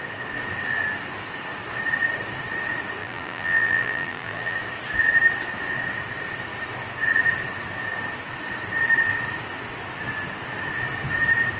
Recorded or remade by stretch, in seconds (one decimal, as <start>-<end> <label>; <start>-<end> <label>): 0.0-3.0 recorded; 3.0-4.6 remade; 4.6-11.6 recorded